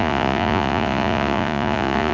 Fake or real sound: fake